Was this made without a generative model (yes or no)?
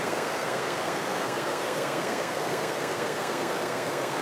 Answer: no